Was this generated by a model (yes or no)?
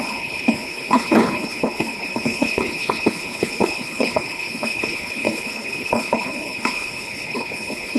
yes